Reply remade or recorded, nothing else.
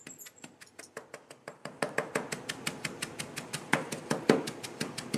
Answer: recorded